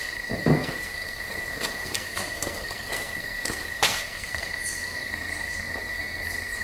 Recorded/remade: remade